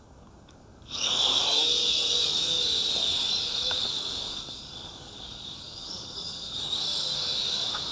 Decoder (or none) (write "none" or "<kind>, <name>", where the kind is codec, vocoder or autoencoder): codec, DAC